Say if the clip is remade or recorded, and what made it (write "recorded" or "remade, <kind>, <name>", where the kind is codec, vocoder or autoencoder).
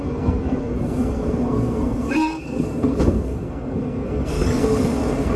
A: remade, codec, SNAC